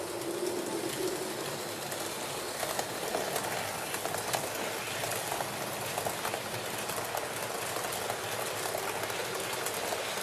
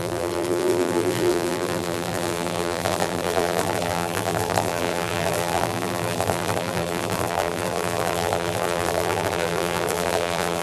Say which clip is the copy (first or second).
second